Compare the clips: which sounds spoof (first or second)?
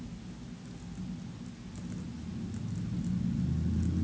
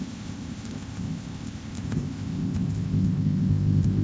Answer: second